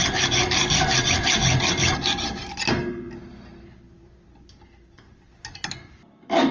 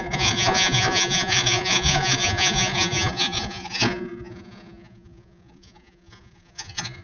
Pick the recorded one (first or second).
first